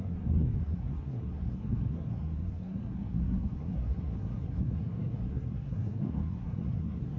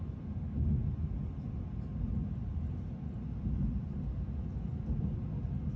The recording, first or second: second